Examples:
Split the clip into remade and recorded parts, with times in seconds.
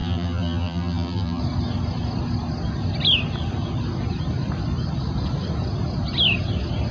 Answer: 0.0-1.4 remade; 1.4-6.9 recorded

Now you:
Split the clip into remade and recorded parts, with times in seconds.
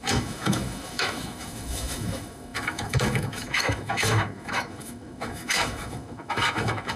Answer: 0.0-7.0 remade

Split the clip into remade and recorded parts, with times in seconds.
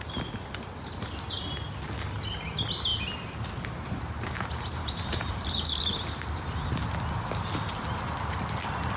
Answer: 0.0-2.9 recorded; 2.9-6.4 remade; 6.4-9.0 recorded